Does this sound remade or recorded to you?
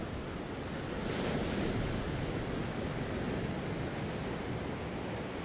recorded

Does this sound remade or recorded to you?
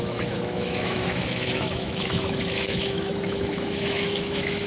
remade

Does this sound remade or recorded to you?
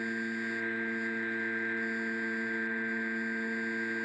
recorded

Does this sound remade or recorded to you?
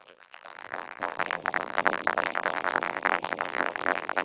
remade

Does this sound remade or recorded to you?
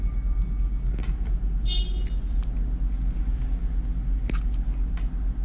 recorded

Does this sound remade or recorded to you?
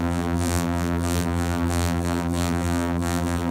remade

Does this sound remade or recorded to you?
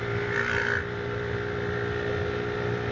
recorded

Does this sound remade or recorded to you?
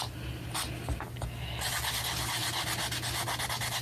recorded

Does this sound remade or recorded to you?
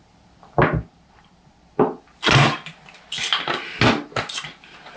recorded